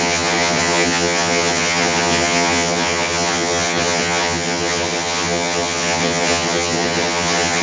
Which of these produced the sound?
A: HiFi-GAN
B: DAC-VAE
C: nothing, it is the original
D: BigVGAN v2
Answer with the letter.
A